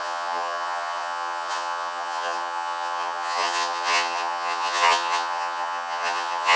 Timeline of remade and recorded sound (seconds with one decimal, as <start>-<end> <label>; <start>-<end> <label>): 0.0-6.6 remade